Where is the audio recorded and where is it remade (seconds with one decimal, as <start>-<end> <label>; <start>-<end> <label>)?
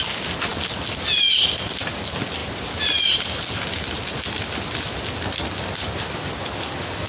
0.0-7.1 recorded